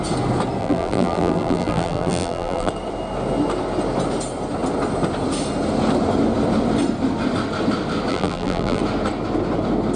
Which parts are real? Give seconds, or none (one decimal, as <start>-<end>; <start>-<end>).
0.0-0.6; 2.7-8.1; 8.8-10.0